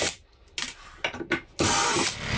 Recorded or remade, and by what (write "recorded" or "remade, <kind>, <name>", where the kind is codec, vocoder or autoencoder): recorded